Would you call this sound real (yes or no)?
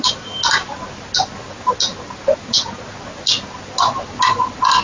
yes